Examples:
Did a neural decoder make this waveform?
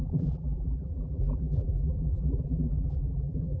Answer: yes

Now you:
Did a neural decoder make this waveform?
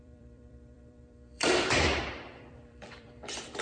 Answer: yes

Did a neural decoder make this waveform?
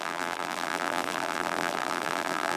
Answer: yes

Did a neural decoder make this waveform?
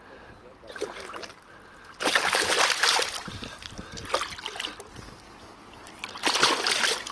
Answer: no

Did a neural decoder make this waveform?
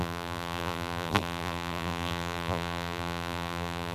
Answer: yes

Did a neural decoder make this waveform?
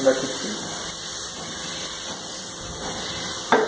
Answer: yes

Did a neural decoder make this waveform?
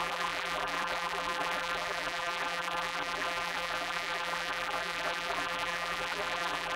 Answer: yes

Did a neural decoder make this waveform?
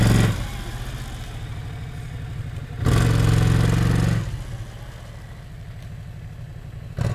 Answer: no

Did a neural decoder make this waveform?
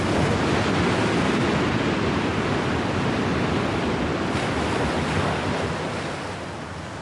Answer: no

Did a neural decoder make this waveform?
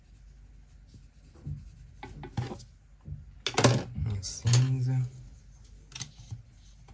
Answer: no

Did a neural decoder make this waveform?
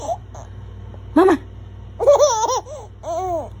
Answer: no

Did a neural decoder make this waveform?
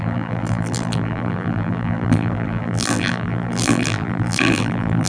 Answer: yes